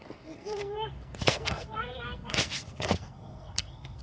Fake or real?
fake